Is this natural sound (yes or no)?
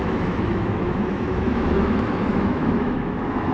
no